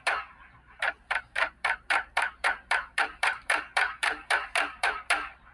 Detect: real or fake fake